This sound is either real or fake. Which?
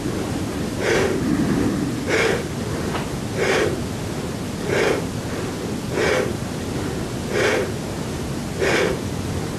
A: real